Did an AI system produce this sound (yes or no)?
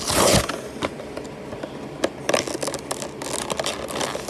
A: no